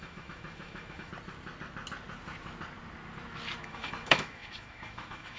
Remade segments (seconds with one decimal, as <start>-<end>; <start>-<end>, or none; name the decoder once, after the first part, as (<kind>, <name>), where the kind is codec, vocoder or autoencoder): 0.0-1.1 (autoencoder, DAC-VAE); 3.6-5.4